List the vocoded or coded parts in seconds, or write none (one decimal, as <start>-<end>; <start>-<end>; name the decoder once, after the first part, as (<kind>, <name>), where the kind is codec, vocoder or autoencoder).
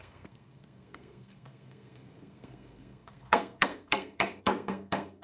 0.0-5.2 (codec, SNAC)